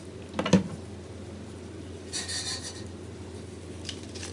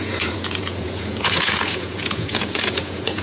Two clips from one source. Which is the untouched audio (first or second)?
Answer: first